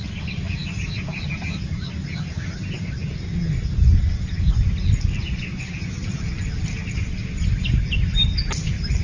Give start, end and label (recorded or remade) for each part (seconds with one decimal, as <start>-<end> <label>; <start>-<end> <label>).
0.0-9.0 recorded